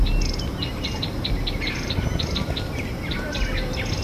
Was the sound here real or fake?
real